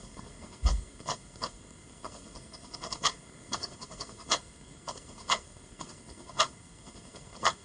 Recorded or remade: remade